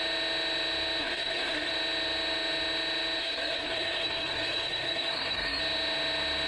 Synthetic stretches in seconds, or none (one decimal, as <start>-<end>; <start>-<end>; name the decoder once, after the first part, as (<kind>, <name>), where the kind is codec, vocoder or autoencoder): 1.0-1.7 (codec, SNAC); 3.2-5.6